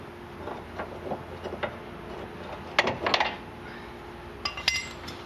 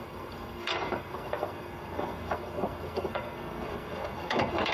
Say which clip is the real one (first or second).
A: first